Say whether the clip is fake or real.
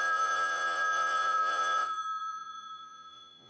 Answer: fake